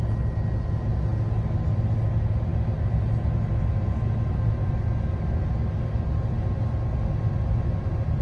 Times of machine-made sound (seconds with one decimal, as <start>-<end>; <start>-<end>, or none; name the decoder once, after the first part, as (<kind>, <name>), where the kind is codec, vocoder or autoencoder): none